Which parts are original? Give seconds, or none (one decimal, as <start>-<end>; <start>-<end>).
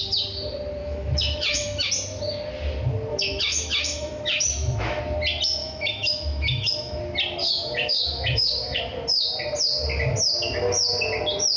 0.0-0.8; 1.9-3.1; 5.0-5.6; 7.0-7.4; 8.8-11.6